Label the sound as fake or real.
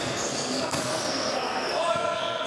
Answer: fake